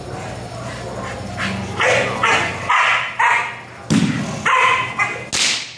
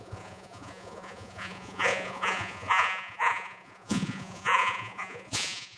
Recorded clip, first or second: first